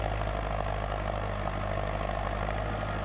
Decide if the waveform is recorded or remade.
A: recorded